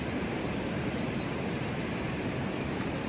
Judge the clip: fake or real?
fake